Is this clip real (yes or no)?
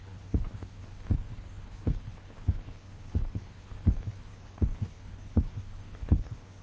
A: no